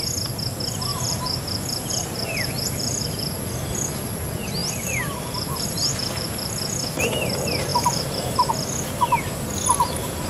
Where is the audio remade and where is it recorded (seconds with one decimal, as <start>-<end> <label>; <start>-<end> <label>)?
0.0-0.9 recorded; 0.9-3.3 remade; 3.3-4.6 recorded; 4.6-6.5 remade; 6.5-7.7 recorded; 7.7-8.5 remade; 8.5-10.3 recorded